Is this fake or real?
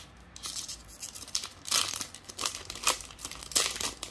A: real